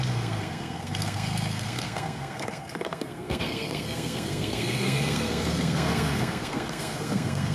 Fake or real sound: fake